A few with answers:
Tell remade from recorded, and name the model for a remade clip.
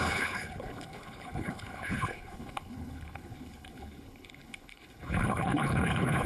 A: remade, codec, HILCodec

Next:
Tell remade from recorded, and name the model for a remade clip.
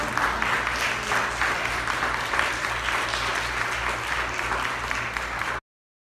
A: recorded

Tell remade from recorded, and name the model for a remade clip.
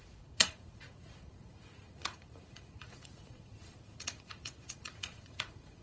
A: remade, vocoder, Vocos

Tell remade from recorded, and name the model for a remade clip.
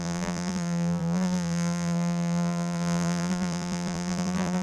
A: remade, vocoder, BigVGAN v2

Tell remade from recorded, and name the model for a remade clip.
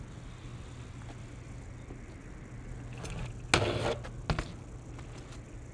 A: recorded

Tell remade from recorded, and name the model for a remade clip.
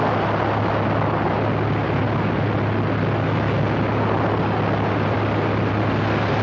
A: recorded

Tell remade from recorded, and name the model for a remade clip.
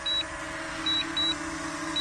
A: recorded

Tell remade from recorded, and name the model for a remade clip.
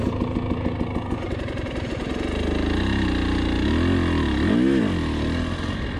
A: recorded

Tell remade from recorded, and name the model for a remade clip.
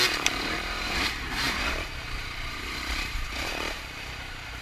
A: remade, vocoder, BigVGAN v2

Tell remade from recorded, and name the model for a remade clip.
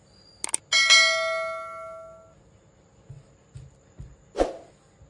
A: recorded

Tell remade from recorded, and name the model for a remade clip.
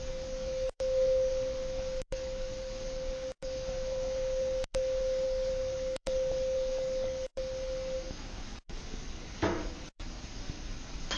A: remade, codec, DAC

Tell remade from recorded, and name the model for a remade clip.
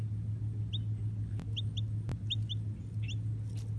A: recorded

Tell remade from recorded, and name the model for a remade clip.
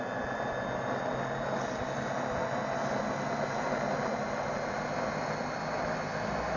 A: recorded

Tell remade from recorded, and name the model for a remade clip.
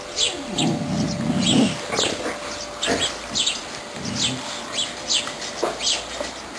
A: recorded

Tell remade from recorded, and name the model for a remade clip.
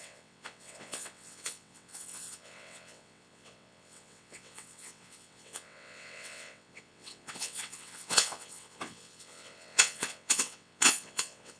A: remade, vocoder, WaveNeXt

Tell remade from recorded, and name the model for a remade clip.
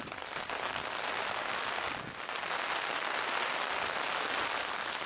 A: recorded